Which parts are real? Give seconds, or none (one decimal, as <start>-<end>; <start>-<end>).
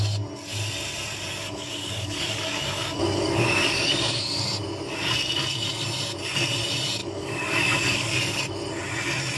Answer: 0.0-1.3; 4.2-7.0; 8.4-9.4